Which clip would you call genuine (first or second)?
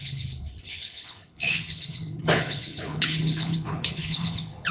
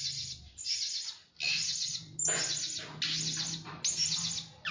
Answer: second